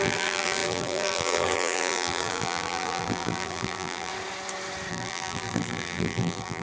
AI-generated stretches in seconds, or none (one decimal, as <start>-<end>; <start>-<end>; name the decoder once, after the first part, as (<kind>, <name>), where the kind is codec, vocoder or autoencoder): 0.0-4.1 (vocoder, BigVGAN v2); 4.9-6.6